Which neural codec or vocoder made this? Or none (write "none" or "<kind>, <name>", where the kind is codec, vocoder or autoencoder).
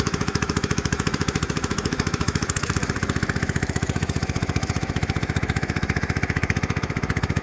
autoencoder, DAC-VAE